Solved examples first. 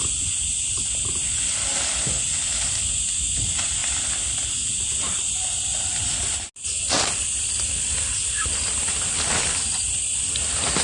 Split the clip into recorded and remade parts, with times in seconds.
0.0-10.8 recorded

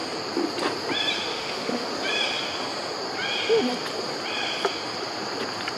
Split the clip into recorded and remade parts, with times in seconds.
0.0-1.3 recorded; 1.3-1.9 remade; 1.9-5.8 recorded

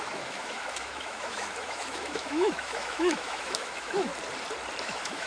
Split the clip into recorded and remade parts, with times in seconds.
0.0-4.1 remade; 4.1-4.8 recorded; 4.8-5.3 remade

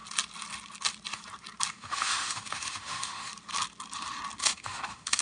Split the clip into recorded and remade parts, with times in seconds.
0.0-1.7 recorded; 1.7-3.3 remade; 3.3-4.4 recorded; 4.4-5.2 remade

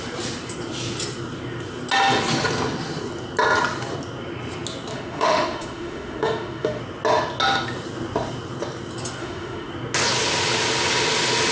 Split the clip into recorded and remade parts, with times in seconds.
0.0-4.9 recorded; 4.9-6.8 remade; 6.8-9.2 recorded; 9.2-9.7 remade; 9.7-11.5 recorded

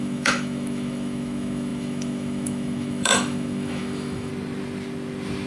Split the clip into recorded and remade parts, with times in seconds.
0.0-4.3 remade; 4.3-5.5 recorded

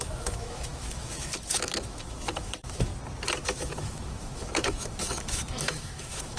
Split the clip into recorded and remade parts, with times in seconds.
0.0-2.9 remade; 2.9-3.4 recorded; 3.4-6.4 remade